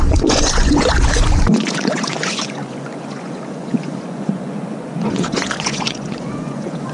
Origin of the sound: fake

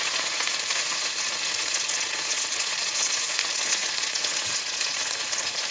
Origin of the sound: fake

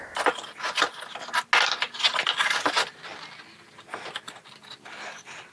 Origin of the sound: real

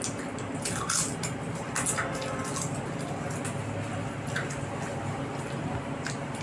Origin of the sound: real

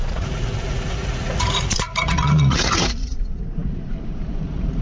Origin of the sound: fake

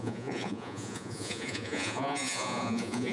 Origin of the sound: fake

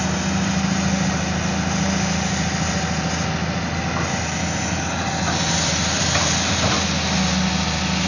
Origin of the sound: real